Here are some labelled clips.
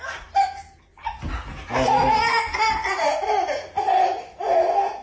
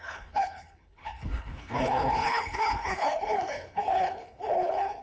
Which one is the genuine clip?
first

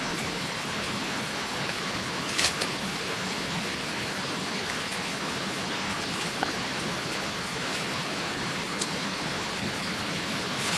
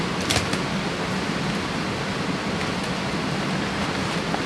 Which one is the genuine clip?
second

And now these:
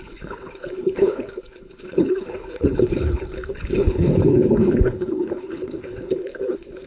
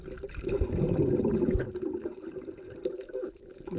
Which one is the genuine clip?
second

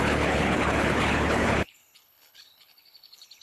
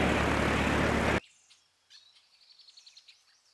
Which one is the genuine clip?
second